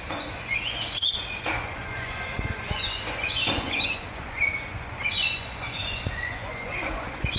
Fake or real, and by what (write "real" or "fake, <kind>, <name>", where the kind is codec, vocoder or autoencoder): fake, vocoder, Vocos